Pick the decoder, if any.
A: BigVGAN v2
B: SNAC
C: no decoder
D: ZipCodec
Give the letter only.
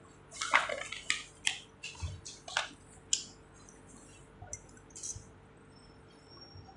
C